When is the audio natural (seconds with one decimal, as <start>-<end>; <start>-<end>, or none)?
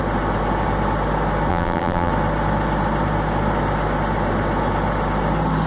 0.0-1.5; 2.1-5.7